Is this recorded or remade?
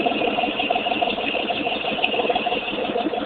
recorded